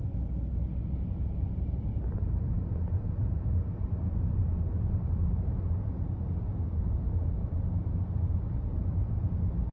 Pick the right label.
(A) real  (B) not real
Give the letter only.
A